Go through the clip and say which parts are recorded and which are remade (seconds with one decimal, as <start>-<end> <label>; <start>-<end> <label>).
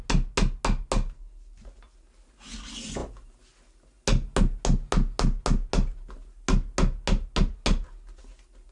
0.0-8.7 recorded